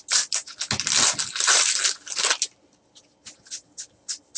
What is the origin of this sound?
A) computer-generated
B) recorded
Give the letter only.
B